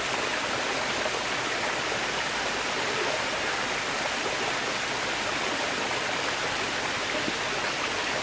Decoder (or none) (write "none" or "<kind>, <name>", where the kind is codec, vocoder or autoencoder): none